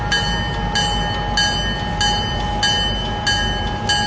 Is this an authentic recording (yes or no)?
yes